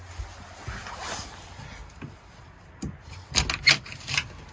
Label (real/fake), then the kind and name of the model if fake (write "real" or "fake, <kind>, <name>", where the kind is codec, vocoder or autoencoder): real